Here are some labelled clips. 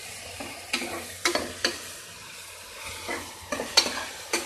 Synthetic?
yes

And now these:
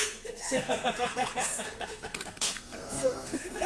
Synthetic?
yes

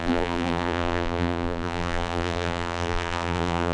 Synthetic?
yes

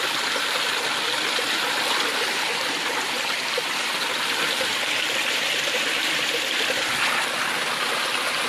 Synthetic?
no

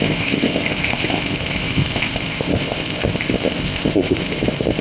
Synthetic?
yes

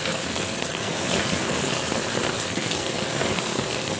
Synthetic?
yes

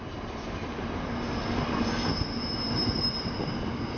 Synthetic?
no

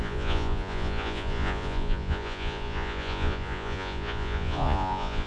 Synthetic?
yes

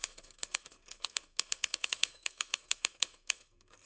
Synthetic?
yes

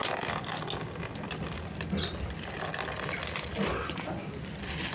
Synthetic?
no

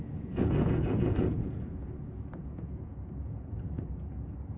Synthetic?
yes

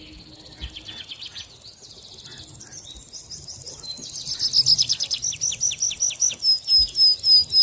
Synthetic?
no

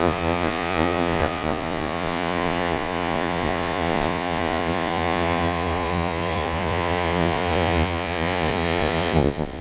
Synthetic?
yes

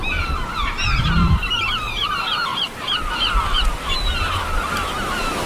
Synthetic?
no